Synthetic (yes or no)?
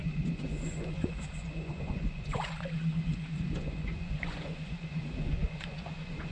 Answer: yes